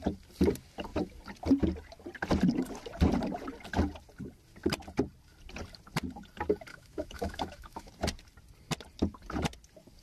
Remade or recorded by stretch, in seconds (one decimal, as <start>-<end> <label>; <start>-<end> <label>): 0.0-6.7 recorded; 6.7-7.9 remade; 7.9-10.0 recorded